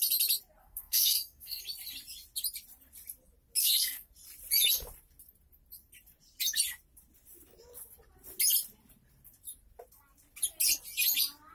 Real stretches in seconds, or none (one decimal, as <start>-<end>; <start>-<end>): 0.0-0.6; 1.6-3.6; 4.1-11.5